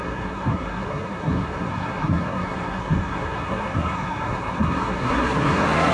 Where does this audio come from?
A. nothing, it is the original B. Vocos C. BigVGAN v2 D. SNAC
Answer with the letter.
D